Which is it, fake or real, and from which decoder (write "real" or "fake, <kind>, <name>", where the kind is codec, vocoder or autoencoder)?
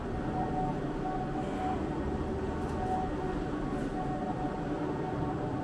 real